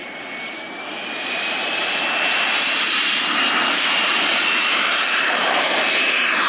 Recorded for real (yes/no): no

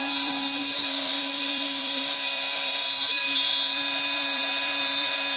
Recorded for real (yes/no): no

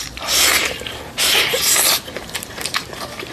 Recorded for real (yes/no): no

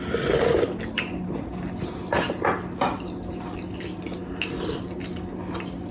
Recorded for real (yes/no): yes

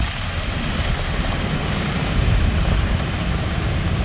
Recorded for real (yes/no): no